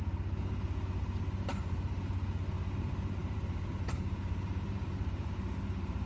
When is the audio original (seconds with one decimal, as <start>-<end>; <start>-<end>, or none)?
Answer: 0.0-1.5; 2.1-3.2